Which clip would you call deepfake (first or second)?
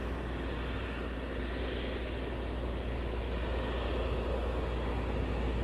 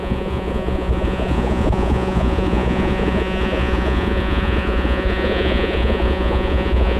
second